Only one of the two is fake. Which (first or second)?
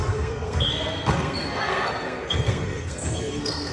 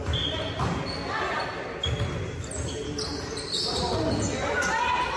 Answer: first